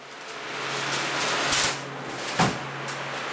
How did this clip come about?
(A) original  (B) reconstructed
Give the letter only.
A